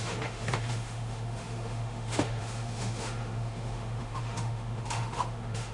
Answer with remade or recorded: remade